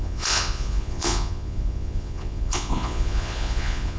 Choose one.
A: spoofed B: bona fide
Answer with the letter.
A